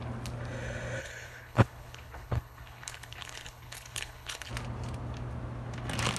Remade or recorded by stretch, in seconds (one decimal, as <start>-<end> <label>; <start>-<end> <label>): 0.0-1.0 recorded; 1.0-4.5 remade; 4.5-6.2 recorded